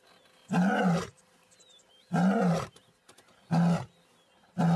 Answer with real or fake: real